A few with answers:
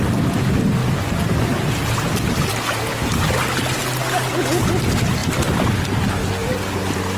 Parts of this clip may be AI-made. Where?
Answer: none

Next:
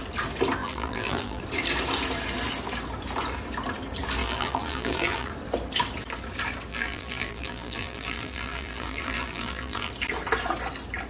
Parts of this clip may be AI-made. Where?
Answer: 0.6-1.4 (vocoder, BigVGAN v2); 4.2-5.3; 6.7-9.9

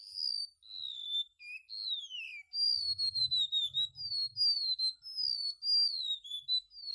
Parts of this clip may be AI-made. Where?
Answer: none

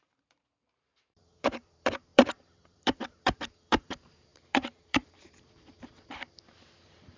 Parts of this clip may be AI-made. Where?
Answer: 0.0-7.2 (vocoder, BigVGAN v2)

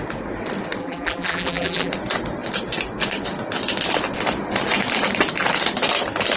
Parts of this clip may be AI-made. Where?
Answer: 0.8-1.9 (vocoder, BigVGAN v2)

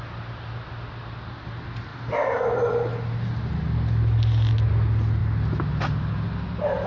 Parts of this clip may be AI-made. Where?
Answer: none

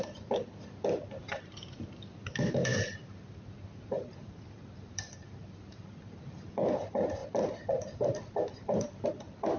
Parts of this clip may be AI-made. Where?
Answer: 1.2-1.8 (vocoder, BigVGAN v2); 2.7-6.2; 7.2-8.9

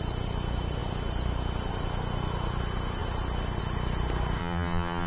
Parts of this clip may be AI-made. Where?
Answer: 4.4-5.1 (vocoder, BigVGAN v2)